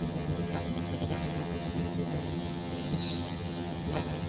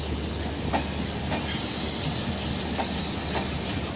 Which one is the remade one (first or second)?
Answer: first